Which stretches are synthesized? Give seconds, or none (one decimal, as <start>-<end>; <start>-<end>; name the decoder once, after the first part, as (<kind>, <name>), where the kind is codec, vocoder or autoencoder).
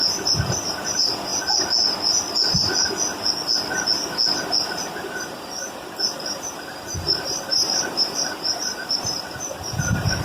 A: 0.0-1.3 (vocoder, BigVGAN v2); 2.5-2.9; 4.9-10.2